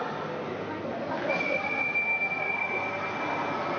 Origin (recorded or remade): recorded